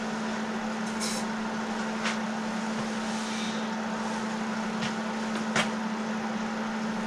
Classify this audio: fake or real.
real